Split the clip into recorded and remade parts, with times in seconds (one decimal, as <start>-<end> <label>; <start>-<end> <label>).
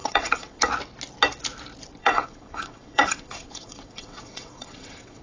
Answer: 0.0-0.6 remade; 0.6-2.0 recorded; 2.0-5.2 remade